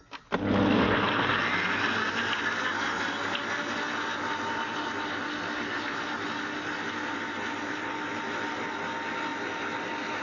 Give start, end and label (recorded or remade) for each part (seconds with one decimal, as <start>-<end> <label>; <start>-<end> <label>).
0.0-10.2 recorded